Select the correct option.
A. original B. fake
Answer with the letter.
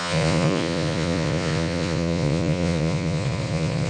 B